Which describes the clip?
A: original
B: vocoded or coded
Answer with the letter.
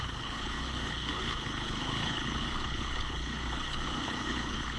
B